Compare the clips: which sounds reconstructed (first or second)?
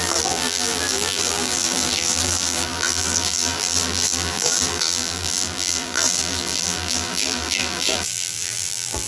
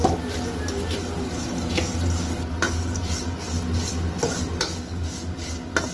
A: first